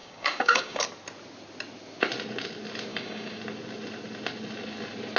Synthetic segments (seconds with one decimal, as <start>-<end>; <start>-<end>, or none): 0.0-0.8; 2.9-3.4